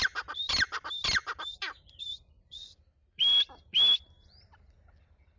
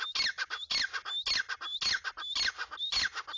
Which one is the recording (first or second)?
second